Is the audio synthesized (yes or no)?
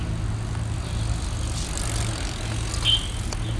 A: no